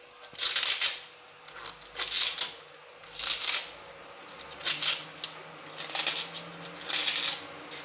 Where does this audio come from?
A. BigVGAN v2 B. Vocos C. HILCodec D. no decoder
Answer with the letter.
D